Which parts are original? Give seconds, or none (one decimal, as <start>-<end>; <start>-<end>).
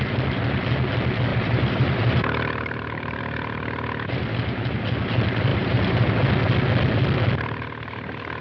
0.0-1.3; 3.2-5.5; 6.1-8.4